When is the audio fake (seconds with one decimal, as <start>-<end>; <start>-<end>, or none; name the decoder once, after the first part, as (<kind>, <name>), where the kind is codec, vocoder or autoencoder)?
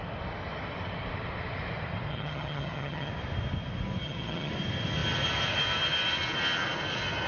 2.1-3.1 (vocoder, HiFi-GAN); 4.0-4.5